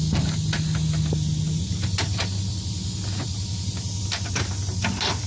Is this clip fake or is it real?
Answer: real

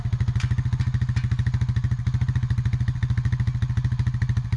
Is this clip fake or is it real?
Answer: real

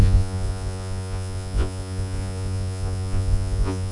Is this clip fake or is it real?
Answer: fake